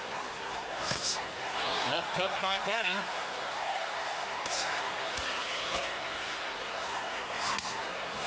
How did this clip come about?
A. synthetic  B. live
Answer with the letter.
A